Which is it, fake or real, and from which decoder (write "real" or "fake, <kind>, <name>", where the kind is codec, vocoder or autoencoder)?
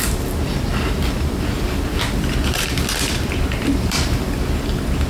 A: fake, vocoder, BigVGAN v2